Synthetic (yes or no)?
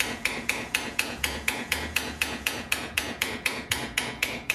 yes